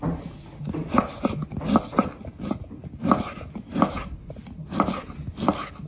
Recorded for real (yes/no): yes